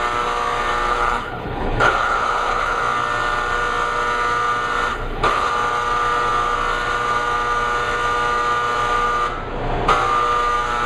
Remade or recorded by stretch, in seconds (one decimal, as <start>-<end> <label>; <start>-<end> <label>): 0.0-0.9 recorded; 0.9-2.8 remade; 2.8-4.9 recorded; 4.9-5.5 remade; 5.5-10.9 recorded

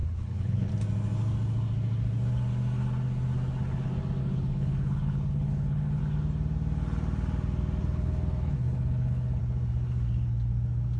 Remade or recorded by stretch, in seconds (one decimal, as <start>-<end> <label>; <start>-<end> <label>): 0.0-0.7 remade; 0.7-4.2 recorded; 4.2-6.0 remade; 6.0-7.8 recorded; 7.8-9.4 remade; 9.4-11.0 recorded

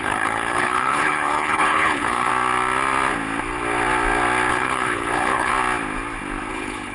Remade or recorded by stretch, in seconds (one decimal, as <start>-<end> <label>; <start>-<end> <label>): 0.0-2.3 remade; 2.3-4.5 recorded; 4.5-5.5 remade; 5.5-6.5 recorded; 6.5-6.9 remade

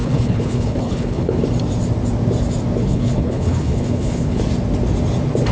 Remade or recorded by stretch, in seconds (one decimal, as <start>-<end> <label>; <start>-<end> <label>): 0.0-1.4 remade; 1.4-2.8 recorded; 2.8-4.4 remade; 4.4-5.5 recorded